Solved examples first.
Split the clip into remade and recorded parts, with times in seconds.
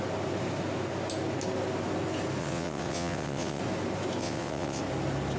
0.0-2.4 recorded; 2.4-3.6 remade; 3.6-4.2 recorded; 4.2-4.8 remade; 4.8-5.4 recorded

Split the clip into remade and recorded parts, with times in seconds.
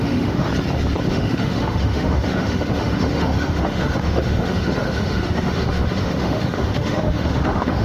0.0-0.5 remade; 0.5-1.1 recorded; 1.1-7.8 remade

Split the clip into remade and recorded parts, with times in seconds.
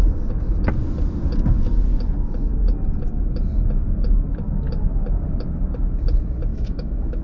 0.0-6.5 recorded; 6.5-7.2 remade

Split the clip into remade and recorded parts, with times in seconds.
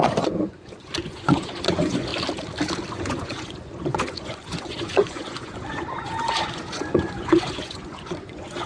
0.0-2.1 remade; 2.1-2.9 recorded; 2.9-8.7 remade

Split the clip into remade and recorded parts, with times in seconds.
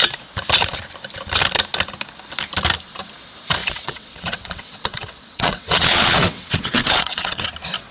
0.0-3.6 recorded; 3.6-7.5 remade; 7.5-7.9 recorded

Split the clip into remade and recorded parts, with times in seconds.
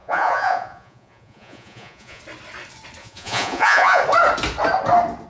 0.0-2.2 remade; 2.2-3.0 recorded; 3.0-4.0 remade; 4.0-5.3 recorded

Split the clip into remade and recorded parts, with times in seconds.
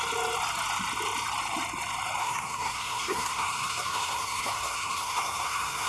0.0-2.2 recorded; 2.2-5.9 remade